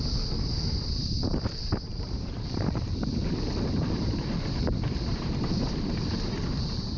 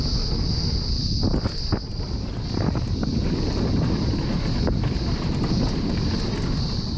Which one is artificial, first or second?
first